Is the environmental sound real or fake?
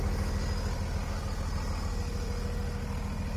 real